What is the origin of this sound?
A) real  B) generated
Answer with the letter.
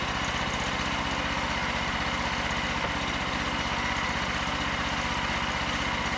A